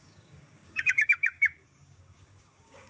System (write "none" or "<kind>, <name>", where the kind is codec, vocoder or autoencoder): codec, DAC